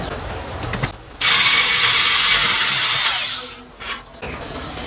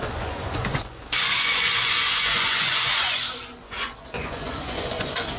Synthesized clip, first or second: second